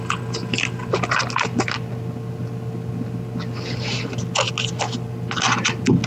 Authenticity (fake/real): real